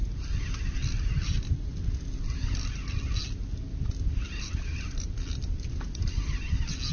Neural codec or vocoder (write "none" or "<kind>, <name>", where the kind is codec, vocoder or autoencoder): none